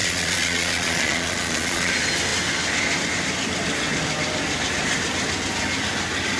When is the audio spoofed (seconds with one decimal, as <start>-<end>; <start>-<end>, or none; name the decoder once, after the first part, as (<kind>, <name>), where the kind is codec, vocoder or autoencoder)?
0.0-1.9 (vocoder, Vocos)